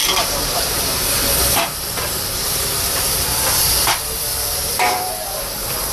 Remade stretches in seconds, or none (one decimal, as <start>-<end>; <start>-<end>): 0.0-2.9; 4.3-5.9